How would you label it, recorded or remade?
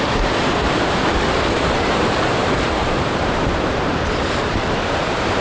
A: remade